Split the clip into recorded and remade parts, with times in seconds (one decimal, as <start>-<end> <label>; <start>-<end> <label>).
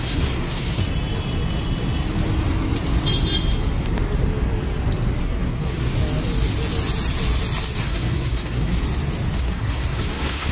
0.0-0.8 remade; 0.8-5.2 recorded; 5.2-5.9 remade; 5.9-7.8 recorded; 7.8-8.7 remade; 8.7-9.4 recorded; 9.4-10.5 remade